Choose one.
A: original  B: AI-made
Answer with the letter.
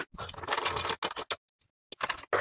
A